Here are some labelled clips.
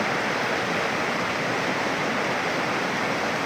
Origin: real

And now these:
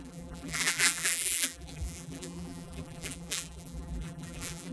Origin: fake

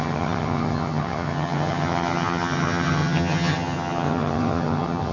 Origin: fake